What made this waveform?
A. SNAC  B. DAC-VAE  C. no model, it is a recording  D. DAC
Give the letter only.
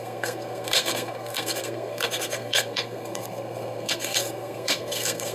A